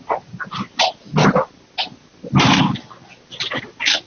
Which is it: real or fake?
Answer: real